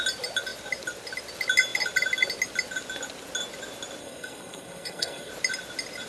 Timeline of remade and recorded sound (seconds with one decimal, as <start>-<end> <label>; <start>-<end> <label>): 0.0-4.0 recorded; 4.0-5.3 remade; 5.3-6.1 recorded

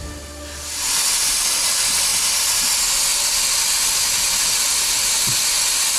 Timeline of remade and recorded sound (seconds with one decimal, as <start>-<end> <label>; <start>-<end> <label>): 0.0-6.0 recorded

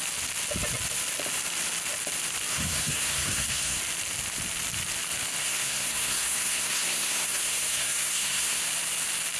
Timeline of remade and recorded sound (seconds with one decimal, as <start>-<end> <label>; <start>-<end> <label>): 0.0-2.5 recorded; 2.5-3.8 remade; 3.8-5.4 recorded; 5.4-8.6 remade; 8.6-9.4 recorded

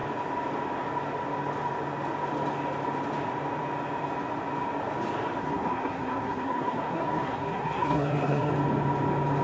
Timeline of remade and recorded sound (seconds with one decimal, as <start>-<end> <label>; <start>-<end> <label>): 0.0-5.4 recorded; 5.4-8.5 remade; 8.5-9.4 recorded

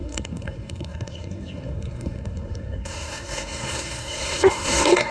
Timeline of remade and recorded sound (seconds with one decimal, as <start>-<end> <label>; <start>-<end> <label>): 0.0-5.1 remade

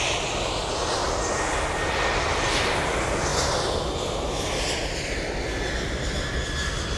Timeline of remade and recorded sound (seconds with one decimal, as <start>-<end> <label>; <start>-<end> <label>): 0.0-7.0 recorded

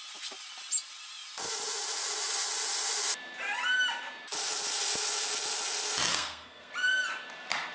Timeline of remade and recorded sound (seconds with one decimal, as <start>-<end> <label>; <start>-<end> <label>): 0.0-6.1 recorded; 6.1-6.7 remade; 6.7-7.7 recorded

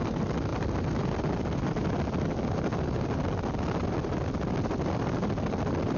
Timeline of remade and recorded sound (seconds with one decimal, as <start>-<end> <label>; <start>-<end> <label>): 0.0-6.0 recorded